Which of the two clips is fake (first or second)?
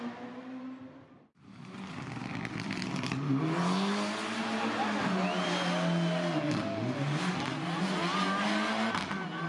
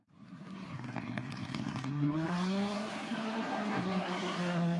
second